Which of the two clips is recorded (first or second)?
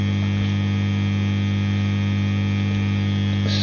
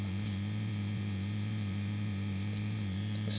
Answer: first